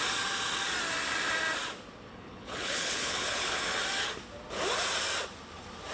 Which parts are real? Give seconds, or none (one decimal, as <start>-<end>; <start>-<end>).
0.0-2.1; 3.6-5.9